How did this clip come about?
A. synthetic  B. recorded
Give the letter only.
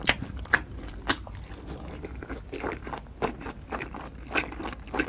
B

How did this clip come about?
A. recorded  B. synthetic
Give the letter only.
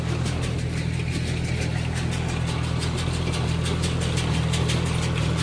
A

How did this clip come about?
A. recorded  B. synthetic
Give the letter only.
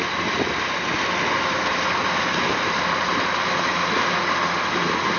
A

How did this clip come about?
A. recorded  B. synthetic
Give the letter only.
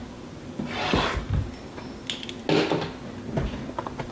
A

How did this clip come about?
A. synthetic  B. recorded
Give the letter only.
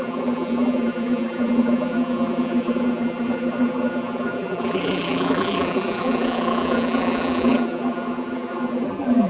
A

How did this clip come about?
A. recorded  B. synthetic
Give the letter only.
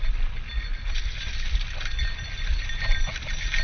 A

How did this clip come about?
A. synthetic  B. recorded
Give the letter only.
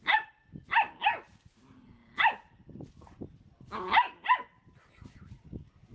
B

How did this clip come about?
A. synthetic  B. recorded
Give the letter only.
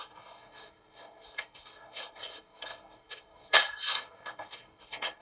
A